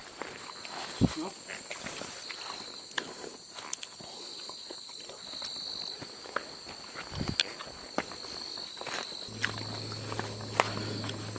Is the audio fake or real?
real